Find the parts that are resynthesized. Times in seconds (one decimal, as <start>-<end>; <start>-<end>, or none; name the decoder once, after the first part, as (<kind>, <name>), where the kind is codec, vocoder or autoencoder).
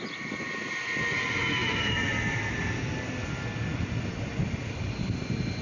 none